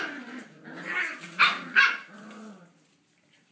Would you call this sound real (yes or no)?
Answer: yes